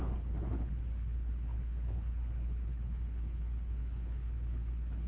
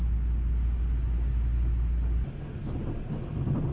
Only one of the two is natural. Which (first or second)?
second